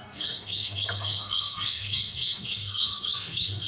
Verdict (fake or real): fake